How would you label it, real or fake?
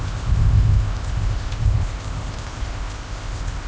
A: fake